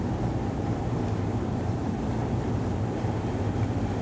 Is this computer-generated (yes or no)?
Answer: no